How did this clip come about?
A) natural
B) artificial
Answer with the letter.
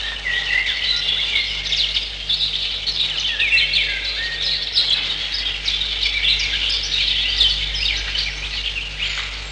A